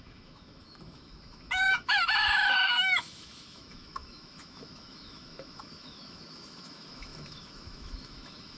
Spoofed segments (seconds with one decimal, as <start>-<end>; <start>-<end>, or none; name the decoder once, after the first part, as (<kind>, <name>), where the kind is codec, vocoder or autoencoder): 0.0-8.6 (autoencoder, DAC-VAE)

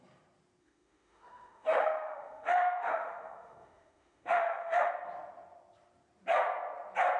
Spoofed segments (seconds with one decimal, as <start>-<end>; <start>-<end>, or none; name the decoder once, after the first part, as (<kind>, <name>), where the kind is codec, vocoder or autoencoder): 0.6-4.9 (autoencoder, DAC-VAE)

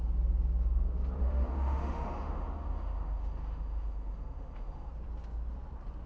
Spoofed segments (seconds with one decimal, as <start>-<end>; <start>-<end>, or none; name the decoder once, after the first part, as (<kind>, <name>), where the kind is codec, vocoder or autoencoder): 1.2-4.9 (autoencoder, DAC-VAE)

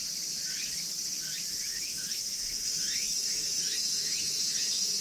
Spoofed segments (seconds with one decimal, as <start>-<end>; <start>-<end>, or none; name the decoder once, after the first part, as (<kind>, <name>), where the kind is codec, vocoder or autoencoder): 1.7-5.0 (autoencoder, DAC-VAE)

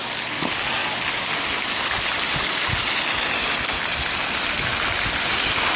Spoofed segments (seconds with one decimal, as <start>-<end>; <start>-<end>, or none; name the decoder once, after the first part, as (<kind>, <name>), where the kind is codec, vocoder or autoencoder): none

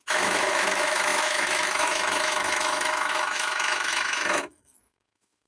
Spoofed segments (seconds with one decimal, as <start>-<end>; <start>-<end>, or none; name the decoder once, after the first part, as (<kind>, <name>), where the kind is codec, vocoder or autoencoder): 0.0-5.5 (autoencoder, DAC-VAE)